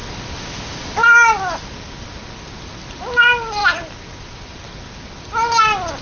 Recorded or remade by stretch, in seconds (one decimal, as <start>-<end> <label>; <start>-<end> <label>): 0.0-6.0 recorded